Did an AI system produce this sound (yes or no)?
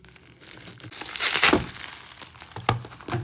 no